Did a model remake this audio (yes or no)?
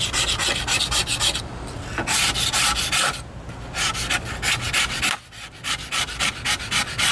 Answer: no